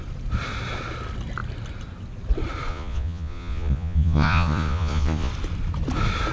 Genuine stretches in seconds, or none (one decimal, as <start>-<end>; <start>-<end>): 0.0-2.7; 5.3-6.3